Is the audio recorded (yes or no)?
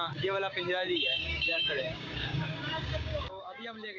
no